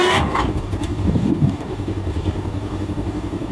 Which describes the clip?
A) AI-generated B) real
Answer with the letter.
A